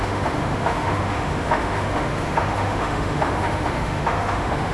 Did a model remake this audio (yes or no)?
yes